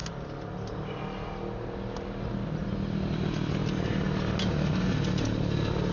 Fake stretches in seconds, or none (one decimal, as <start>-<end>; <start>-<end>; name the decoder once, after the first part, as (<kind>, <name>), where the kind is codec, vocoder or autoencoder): none

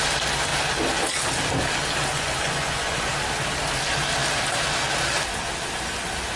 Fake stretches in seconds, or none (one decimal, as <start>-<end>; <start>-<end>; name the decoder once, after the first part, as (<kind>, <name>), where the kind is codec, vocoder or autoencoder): 2.1-3.1 (vocoder, Vocos)